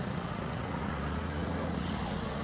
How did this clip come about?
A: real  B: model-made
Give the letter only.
B